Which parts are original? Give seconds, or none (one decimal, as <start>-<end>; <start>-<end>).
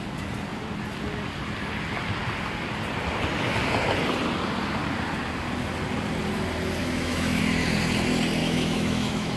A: 0.0-6.8; 7.4-8.4